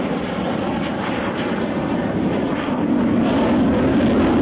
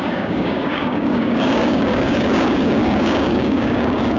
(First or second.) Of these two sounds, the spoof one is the second